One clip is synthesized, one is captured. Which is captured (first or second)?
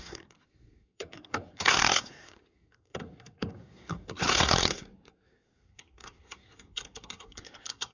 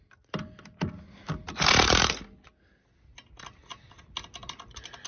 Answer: second